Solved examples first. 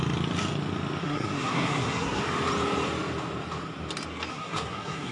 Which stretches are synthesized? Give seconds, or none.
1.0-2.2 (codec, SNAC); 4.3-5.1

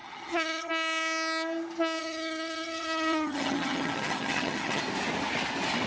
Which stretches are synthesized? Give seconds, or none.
0.0-0.7 (vocoder, HiFi-GAN); 2.0-4.8

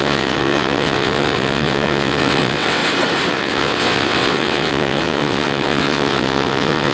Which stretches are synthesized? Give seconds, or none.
0.0-2.8 (vocoder, WaveNeXt); 3.3-6.9

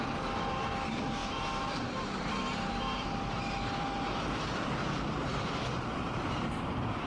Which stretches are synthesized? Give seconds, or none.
0.0-4.8 (vocoder, BigVGAN v2); 5.3-7.1

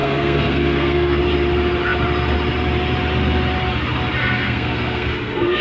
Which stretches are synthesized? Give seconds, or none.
0.0-1.2 (codec, SNAC); 4.2-5.6